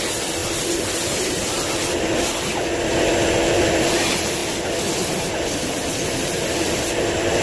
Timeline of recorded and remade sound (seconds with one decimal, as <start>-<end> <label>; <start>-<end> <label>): 0.0-7.4 recorded